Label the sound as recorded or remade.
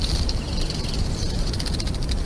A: recorded